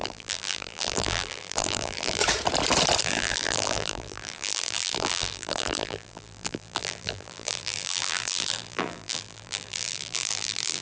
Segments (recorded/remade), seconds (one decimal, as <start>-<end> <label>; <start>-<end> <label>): 0.0-2.2 remade; 2.2-3.0 recorded; 3.0-10.8 remade